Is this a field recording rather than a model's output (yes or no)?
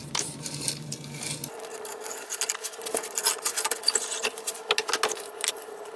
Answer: yes